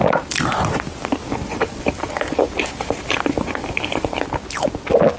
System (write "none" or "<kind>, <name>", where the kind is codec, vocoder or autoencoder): none